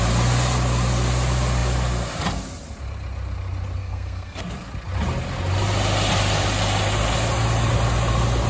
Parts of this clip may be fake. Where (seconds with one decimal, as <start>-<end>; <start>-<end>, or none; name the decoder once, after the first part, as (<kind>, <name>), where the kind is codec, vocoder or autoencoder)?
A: 3.8-4.4 (codec, SNAC)